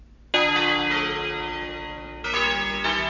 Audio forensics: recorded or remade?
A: recorded